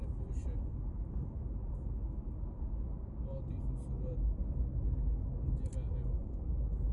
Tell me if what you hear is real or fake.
real